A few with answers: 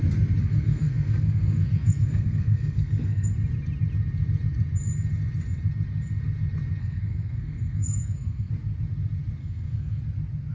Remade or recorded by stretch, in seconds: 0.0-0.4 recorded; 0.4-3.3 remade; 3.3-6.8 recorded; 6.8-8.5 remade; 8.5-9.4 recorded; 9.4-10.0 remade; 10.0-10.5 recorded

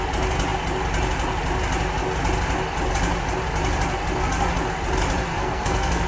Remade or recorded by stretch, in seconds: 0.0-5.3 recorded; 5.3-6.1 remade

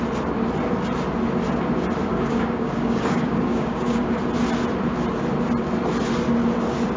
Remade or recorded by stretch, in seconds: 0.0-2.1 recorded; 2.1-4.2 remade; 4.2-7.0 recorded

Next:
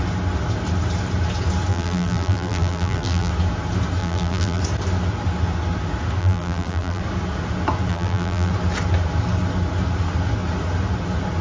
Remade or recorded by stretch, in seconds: 0.0-1.7 recorded; 1.7-3.3 remade; 3.3-4.0 recorded; 4.0-4.6 remade; 4.6-6.2 recorded; 6.2-7.0 remade; 7.0-7.9 recorded; 7.9-8.5 remade; 8.5-11.4 recorded